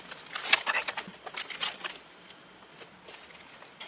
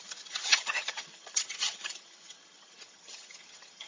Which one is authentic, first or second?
first